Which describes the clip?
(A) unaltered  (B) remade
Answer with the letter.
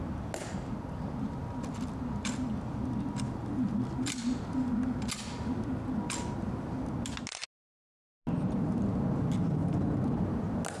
A